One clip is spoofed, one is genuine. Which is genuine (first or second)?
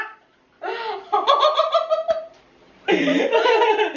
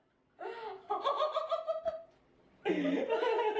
second